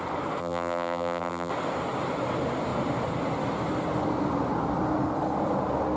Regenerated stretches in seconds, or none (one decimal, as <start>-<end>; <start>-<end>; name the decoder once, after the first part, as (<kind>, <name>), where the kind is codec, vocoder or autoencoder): 0.4-1.5 (vocoder, BigVGAN v2)